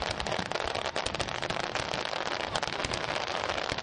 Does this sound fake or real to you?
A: real